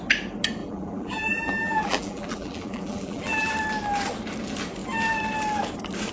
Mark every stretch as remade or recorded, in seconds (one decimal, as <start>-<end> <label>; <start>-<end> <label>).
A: 0.0-0.6 recorded; 0.6-3.5 remade; 3.5-6.1 recorded